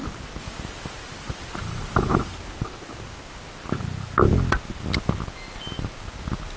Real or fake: real